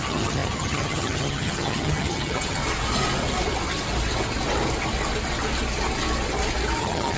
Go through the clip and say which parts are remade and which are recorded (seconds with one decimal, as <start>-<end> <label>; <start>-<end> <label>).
0.0-2.6 remade; 2.6-6.8 recorded; 6.8-7.2 remade